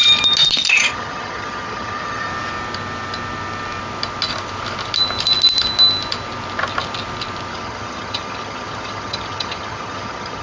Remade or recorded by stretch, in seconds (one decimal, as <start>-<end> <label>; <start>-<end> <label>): 0.0-0.7 recorded; 0.7-2.3 remade; 2.3-7.5 recorded; 7.5-10.4 remade